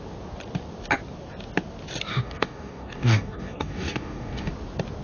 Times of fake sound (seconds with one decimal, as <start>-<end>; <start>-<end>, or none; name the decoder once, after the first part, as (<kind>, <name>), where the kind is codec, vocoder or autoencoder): 2.1-4.5 (codec, DAC)